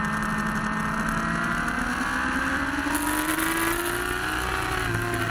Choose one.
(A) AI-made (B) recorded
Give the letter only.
B